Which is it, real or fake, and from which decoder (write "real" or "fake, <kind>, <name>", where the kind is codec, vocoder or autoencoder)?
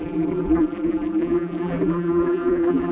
fake, vocoder, BigVGAN v2